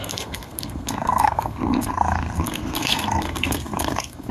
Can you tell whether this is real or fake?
fake